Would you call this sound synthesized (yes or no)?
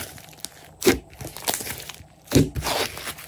no